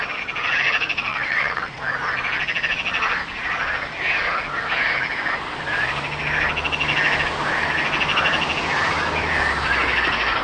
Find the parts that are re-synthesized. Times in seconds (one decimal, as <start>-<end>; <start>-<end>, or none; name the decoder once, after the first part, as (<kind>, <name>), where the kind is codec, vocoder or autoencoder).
1.1-1.8 (vocoder, WaveNeXt)